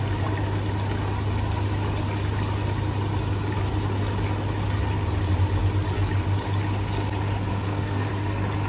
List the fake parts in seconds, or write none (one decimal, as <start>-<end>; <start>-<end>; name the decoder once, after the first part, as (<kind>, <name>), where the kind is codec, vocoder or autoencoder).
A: 7.5-8.1 (codec, SNAC)